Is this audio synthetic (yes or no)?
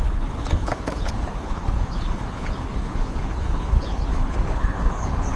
yes